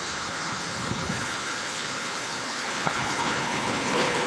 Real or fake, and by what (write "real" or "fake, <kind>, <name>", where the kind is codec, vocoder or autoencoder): fake, codec, HILCodec